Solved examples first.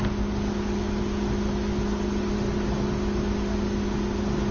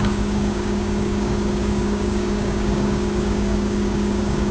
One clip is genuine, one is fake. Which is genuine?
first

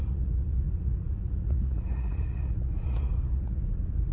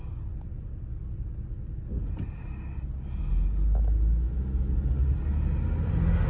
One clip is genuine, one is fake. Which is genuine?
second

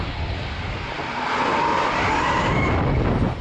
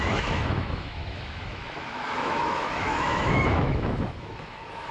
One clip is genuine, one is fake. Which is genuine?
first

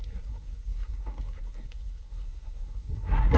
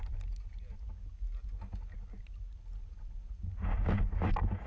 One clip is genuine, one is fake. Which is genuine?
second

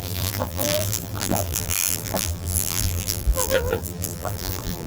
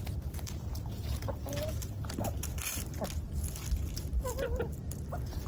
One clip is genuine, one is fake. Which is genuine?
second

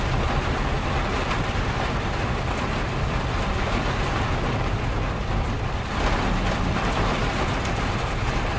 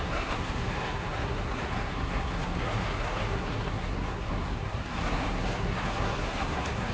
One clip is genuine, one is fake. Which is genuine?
first